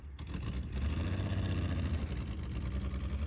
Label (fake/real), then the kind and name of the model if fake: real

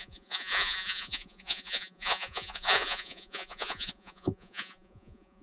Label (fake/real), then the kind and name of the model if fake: fake, vocoder, Vocos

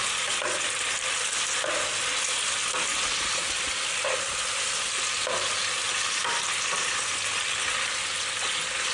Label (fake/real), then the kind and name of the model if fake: real